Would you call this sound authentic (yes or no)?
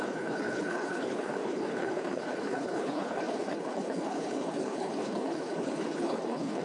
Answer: no